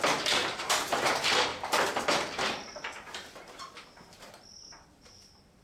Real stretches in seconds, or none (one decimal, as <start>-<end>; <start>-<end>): 0.0-0.4; 1.1-2.6; 4.3-5.6